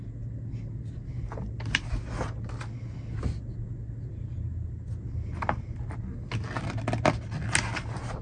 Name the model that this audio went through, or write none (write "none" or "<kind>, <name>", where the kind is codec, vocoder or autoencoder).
none